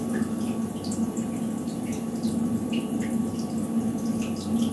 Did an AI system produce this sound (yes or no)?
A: no